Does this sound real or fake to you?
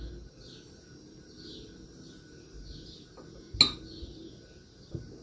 real